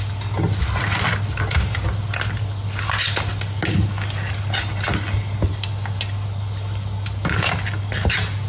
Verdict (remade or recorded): recorded